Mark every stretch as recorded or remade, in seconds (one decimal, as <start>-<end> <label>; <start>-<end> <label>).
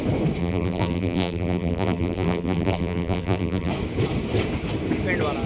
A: 0.0-0.4 recorded; 0.4-3.7 remade; 3.7-5.5 recorded